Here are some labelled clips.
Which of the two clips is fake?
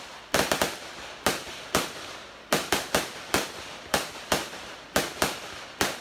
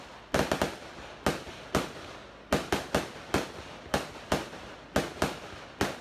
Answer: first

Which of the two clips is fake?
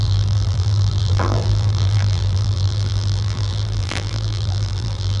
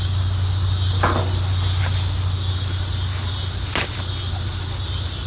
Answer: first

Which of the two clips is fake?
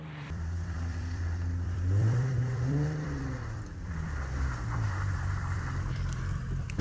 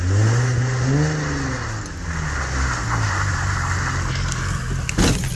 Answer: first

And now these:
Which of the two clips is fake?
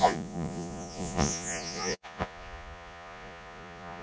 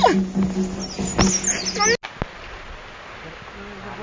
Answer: first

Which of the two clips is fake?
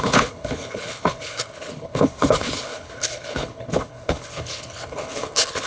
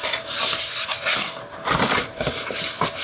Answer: first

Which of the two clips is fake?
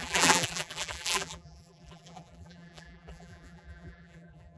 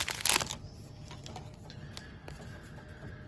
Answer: first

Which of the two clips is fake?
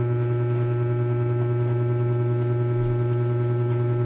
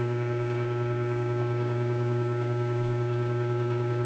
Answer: second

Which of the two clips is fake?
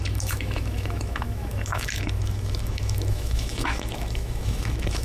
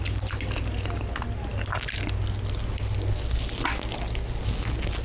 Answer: first